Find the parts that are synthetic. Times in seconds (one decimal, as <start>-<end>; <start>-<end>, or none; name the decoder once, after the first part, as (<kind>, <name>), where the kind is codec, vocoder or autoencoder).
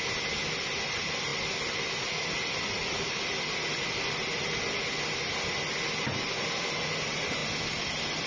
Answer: none